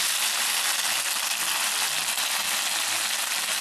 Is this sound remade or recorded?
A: recorded